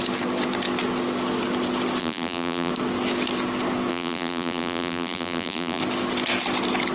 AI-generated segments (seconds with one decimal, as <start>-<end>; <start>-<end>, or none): 2.0-2.7; 3.9-5.8